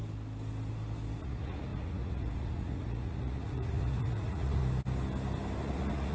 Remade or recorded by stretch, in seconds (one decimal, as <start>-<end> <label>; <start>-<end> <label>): 0.0-1.2 recorded; 1.2-4.6 remade; 4.6-5.6 recorded; 5.6-6.1 remade